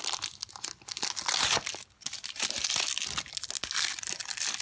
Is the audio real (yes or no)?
yes